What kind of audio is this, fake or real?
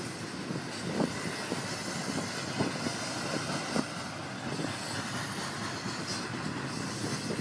real